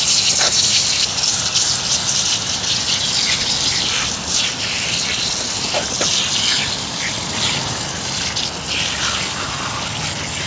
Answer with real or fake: real